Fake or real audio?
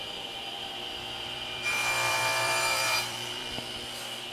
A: fake